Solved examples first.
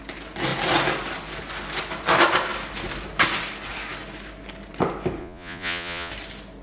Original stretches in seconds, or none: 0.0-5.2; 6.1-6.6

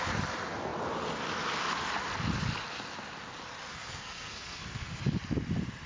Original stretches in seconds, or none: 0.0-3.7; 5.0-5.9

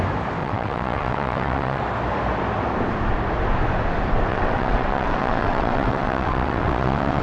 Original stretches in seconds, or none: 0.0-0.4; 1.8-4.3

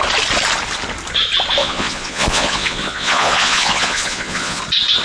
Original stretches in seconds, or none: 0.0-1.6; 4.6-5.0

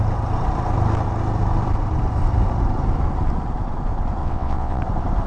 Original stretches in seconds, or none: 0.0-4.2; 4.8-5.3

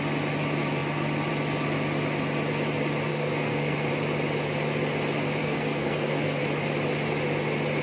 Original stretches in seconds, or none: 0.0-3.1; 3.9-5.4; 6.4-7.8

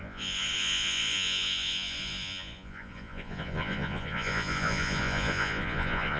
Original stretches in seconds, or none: none